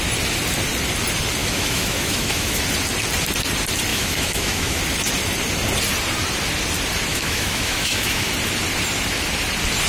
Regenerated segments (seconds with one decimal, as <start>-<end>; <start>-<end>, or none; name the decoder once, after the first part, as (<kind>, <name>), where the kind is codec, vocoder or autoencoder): 1.4-2.6 (autoencoder, DAC-VAE); 3.9-4.8; 7.1-8.3